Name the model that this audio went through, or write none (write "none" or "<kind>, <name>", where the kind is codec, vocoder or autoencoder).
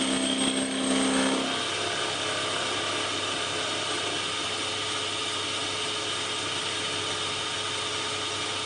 none